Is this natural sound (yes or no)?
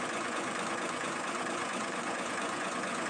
no